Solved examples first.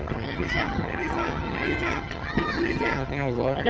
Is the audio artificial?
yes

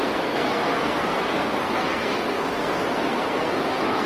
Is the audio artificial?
yes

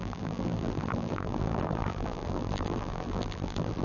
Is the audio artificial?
yes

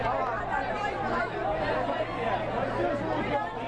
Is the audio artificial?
no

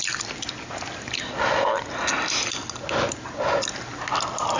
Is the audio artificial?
no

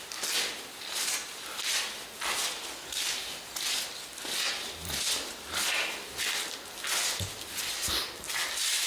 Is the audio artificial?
no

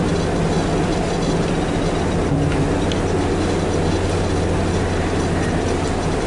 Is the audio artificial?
no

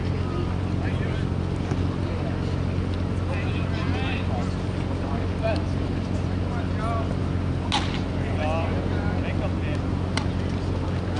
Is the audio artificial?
no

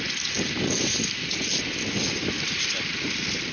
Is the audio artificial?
no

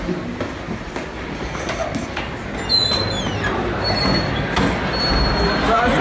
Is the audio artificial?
no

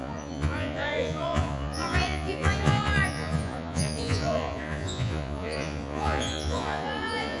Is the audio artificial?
yes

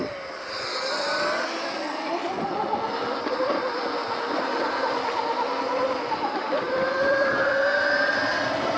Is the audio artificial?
no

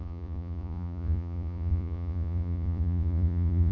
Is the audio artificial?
yes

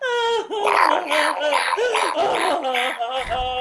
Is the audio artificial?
no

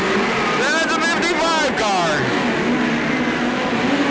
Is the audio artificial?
no